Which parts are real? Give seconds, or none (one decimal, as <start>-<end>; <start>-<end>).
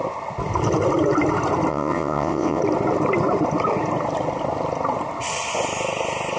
0.0-1.7; 2.6-6.4